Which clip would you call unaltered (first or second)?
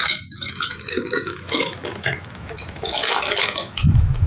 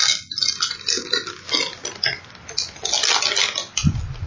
second